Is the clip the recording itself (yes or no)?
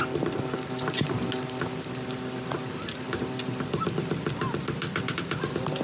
yes